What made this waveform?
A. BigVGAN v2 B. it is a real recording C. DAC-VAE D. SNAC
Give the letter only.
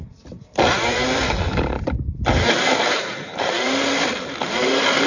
A